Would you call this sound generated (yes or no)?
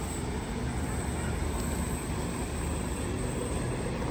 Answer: no